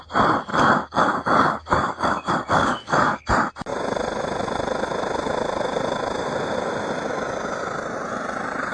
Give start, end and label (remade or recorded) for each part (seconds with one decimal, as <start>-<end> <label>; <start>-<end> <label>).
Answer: 0.0-0.5 recorded; 0.5-3.3 remade; 3.3-8.7 recorded